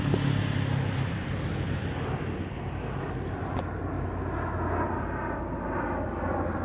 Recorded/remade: recorded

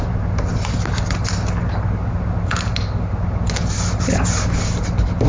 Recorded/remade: recorded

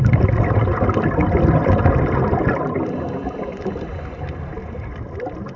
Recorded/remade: recorded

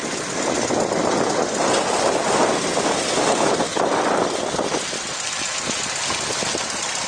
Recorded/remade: recorded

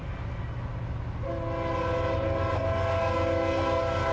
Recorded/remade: recorded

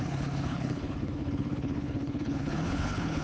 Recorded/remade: remade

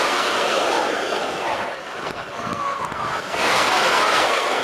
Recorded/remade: remade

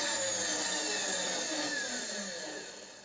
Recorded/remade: recorded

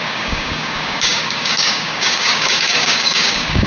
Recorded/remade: remade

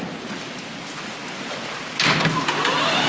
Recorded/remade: recorded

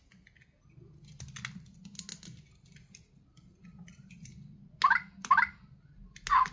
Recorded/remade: recorded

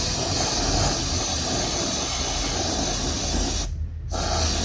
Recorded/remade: recorded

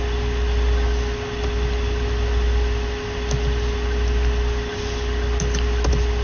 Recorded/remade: recorded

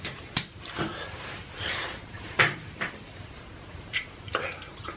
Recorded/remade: remade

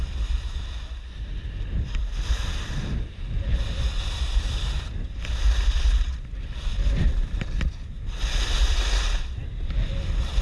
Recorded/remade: recorded